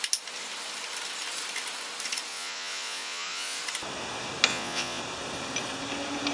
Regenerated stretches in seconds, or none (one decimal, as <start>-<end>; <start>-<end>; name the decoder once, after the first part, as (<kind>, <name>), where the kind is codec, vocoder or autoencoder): 2.3-3.6 (vocoder, Vocos); 4.5-5.0